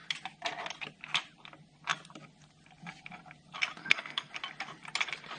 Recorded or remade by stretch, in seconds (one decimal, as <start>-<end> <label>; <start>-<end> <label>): 0.0-3.8 recorded; 3.8-4.3 remade; 4.3-5.4 recorded